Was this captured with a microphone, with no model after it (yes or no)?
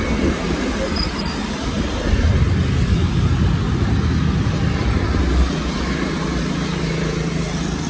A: yes